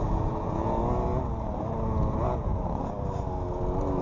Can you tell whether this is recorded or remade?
recorded